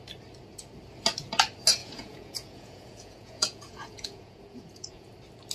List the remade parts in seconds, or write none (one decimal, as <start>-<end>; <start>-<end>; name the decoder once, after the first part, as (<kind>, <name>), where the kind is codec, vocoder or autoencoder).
1.8-5.1 (vocoder, Vocos)